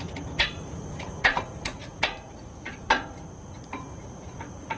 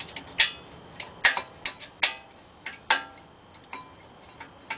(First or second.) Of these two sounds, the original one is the second